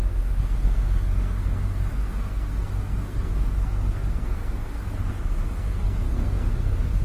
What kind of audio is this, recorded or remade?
remade